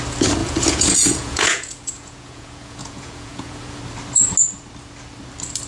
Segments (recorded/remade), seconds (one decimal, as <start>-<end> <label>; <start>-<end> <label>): 0.0-0.4 recorded; 0.4-3.8 remade; 3.8-5.7 recorded